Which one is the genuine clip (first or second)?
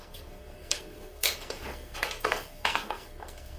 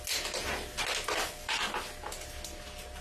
second